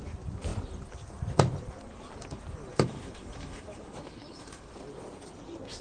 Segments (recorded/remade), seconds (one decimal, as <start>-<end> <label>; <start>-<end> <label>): 0.0-2.7 recorded; 2.7-4.7 remade; 4.7-5.8 recorded